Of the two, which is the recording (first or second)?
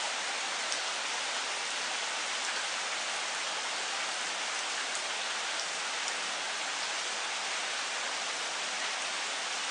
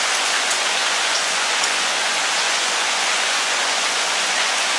first